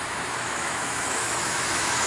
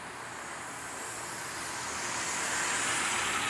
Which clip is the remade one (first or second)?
first